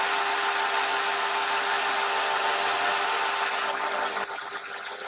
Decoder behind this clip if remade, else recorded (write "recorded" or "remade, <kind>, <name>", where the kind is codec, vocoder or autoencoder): recorded